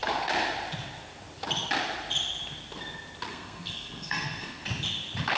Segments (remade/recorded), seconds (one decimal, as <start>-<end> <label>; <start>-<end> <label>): 0.0-3.3 recorded; 3.3-4.6 remade; 4.6-5.4 recorded